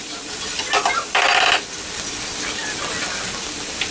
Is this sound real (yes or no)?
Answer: yes